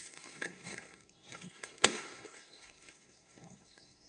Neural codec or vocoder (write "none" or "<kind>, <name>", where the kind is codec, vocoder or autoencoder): codec, SNAC